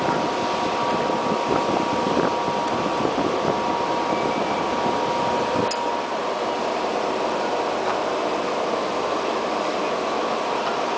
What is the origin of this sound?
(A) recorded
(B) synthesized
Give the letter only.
A